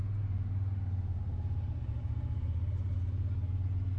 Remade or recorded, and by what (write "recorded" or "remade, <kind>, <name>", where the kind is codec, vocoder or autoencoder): recorded